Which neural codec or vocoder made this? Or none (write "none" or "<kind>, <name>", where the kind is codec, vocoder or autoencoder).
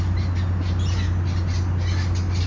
none